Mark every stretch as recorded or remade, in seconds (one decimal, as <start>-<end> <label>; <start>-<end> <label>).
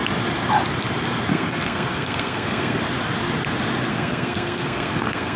0.0-1.3 recorded; 1.3-2.8 remade; 2.8-3.9 recorded; 3.9-5.4 remade